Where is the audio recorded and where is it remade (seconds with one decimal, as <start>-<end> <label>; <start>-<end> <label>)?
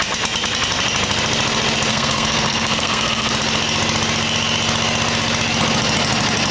0.0-1.9 recorded; 1.9-3.3 remade; 3.3-6.5 recorded